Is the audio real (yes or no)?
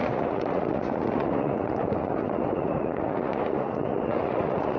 no